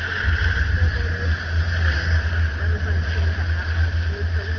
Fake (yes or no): no